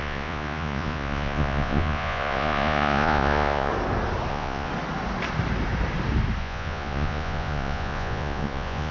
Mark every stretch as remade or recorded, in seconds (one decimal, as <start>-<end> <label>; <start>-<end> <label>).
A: 0.0-3.7 remade; 3.7-4.3 recorded; 4.3-4.7 remade; 4.7-6.4 recorded; 6.4-8.9 remade